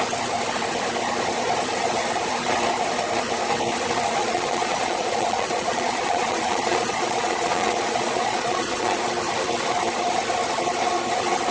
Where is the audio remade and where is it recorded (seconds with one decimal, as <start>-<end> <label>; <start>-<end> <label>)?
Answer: 0.0-4.2 recorded; 4.2-9.0 remade; 9.0-11.5 recorded

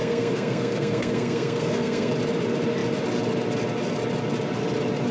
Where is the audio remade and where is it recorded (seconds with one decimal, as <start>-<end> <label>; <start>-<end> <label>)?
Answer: 0.0-2.1 remade; 2.1-5.1 recorded

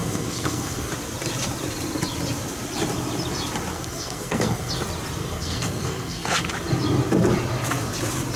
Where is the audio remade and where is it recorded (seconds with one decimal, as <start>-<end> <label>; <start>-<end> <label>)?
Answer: 0.0-0.9 remade; 0.9-3.7 recorded; 3.7-4.7 remade; 4.7-5.2 recorded; 5.2-6.5 remade; 6.5-8.4 recorded

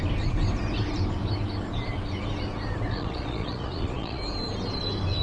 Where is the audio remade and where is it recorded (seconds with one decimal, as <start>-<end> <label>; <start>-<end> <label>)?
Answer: 0.0-2.9 recorded; 2.9-4.2 remade; 4.2-5.2 recorded

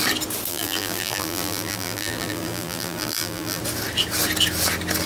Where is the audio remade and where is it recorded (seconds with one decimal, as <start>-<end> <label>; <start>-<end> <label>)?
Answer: 0.0-0.5 recorded; 0.5-3.6 remade; 3.6-5.1 recorded

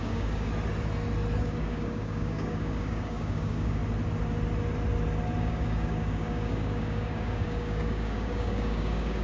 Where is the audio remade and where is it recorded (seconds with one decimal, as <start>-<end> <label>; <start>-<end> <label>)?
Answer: 0.0-0.5 remade; 0.5-1.4 recorded; 1.4-3.8 remade; 3.8-5.4 recorded; 5.4-9.2 remade

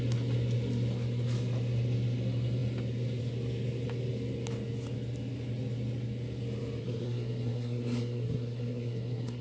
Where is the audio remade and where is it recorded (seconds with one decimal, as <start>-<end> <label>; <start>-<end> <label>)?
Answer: 0.0-6.8 recorded; 6.8-9.4 remade